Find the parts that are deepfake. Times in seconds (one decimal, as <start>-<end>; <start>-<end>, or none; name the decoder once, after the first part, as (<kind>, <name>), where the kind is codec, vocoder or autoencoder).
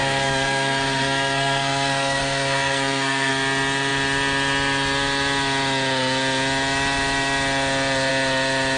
0.0-3.3 (codec, SNAC)